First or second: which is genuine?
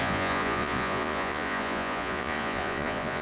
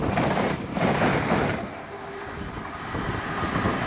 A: second